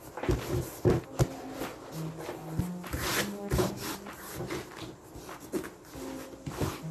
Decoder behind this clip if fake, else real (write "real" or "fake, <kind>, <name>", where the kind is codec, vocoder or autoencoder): real